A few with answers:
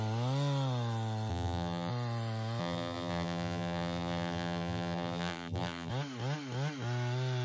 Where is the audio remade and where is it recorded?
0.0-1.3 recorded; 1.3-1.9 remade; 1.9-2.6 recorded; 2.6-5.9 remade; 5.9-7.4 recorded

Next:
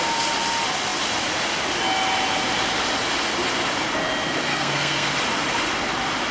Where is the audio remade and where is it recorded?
0.0-4.5 recorded; 4.5-5.1 remade; 5.1-6.3 recorded

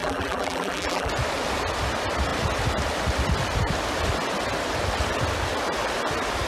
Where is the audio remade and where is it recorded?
0.0-1.1 remade; 1.1-6.5 recorded

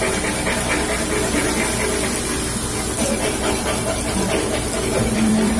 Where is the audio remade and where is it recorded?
0.0-3.0 recorded; 3.0-5.6 remade

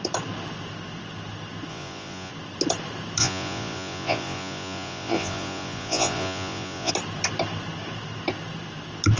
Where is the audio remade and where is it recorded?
0.0-1.7 recorded; 1.7-2.3 remade; 2.3-3.2 recorded; 3.2-6.9 remade; 6.9-9.2 recorded

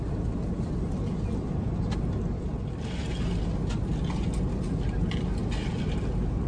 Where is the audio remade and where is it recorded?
0.0-6.5 recorded

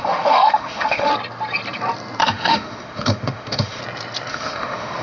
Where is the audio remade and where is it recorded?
0.0-1.1 remade; 1.1-2.2 recorded; 2.2-3.8 remade; 3.8-4.3 recorded; 4.3-5.0 remade

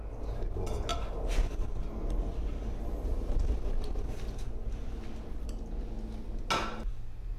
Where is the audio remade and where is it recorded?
0.0-0.9 recorded; 0.9-1.5 remade; 1.5-3.1 recorded; 3.1-4.0 remade; 4.0-7.4 recorded